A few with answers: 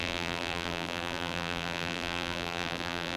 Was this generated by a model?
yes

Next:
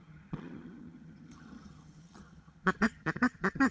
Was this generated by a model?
yes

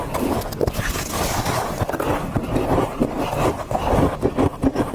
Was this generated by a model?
no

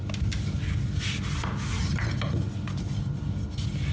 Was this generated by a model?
no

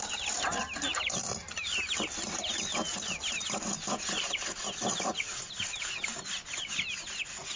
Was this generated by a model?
no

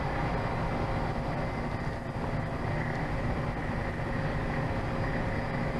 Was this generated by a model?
no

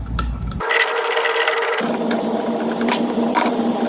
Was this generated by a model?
no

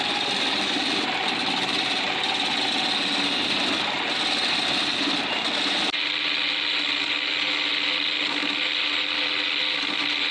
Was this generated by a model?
no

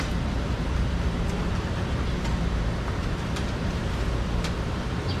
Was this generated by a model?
yes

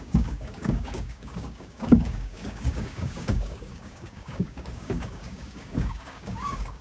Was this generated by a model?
yes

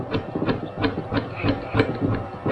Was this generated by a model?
no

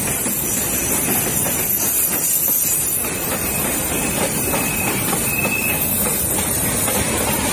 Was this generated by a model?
no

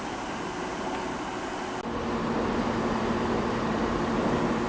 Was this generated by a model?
no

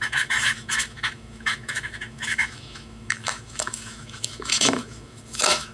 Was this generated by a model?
yes